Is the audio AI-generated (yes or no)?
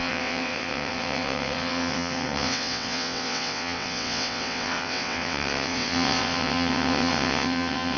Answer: yes